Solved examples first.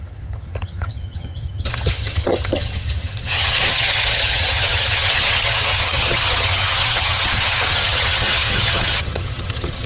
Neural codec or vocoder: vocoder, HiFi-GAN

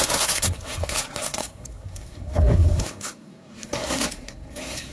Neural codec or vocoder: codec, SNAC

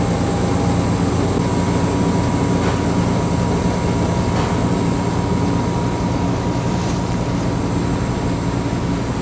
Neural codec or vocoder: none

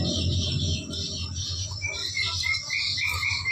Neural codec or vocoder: none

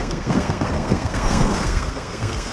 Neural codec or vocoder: codec, SNAC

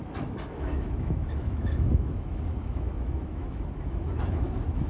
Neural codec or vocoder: autoencoder, DAC-VAE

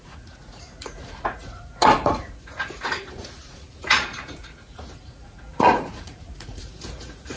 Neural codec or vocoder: vocoder, Vocos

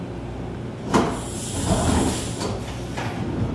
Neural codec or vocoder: none